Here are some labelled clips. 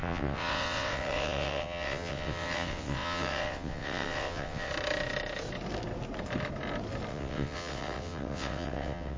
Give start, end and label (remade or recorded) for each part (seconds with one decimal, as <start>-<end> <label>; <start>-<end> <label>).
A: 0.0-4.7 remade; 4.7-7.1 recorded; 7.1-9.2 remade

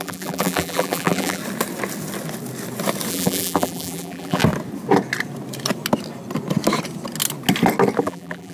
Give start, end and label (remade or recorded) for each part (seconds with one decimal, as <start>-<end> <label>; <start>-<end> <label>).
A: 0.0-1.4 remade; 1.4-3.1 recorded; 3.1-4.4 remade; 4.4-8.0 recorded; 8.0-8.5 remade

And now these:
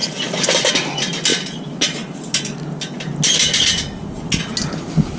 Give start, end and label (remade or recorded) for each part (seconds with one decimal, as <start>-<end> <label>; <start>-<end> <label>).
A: 0.0-5.2 recorded

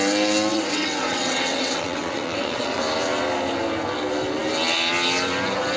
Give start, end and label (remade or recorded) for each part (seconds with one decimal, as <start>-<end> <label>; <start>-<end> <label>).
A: 0.0-0.5 recorded; 0.5-2.8 remade; 2.8-5.8 recorded